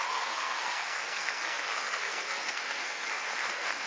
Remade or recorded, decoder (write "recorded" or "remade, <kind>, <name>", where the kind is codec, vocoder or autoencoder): remade, codec, SNAC